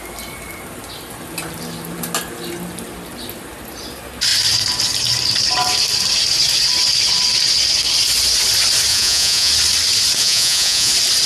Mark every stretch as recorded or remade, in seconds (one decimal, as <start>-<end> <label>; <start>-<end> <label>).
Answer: 0.0-8.9 recorded; 8.9-9.5 remade; 9.5-10.2 recorded; 10.2-10.9 remade; 10.9-11.3 recorded